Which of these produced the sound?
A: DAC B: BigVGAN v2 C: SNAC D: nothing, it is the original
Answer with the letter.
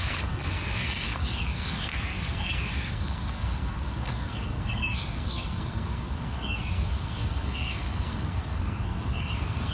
C